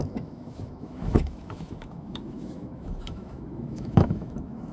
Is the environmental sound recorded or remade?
remade